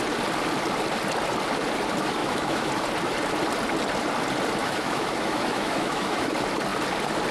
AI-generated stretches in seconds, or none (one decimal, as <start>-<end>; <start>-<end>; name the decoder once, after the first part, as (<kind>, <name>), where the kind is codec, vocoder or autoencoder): 2.2-2.7 (autoencoder, DAC-VAE); 4.6-6.3